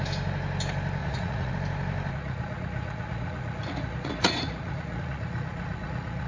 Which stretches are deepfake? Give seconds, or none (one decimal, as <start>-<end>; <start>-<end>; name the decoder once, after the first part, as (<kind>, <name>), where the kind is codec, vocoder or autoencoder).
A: 1.0-1.5 (vocoder, Vocos); 2.2-6.3

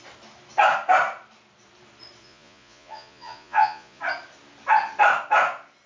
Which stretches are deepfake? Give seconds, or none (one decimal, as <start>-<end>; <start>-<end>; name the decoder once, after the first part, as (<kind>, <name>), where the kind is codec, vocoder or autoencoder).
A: 2.2-4.0 (vocoder, Vocos)

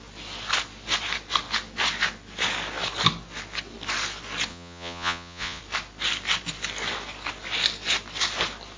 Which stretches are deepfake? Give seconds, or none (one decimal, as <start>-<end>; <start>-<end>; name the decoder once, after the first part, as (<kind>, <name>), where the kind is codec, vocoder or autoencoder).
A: 4.5-5.6 (vocoder, Vocos)

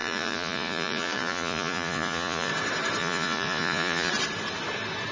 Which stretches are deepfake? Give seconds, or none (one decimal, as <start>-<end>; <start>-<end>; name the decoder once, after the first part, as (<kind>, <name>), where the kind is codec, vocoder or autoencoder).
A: 0.0-2.5 (vocoder, Vocos); 3.0-4.1

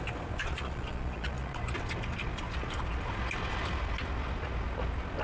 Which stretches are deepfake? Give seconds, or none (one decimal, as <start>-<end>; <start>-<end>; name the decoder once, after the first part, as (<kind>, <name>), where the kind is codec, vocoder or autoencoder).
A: 0.4-1.6 (vocoder, Vocos)

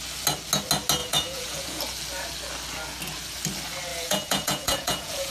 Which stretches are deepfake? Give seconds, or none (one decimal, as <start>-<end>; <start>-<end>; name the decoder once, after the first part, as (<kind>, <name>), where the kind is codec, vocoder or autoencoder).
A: 1.0-1.8 (vocoder, Vocos); 3.9-5.3